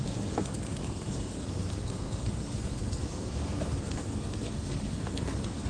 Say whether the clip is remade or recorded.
remade